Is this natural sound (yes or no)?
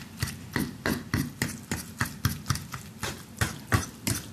yes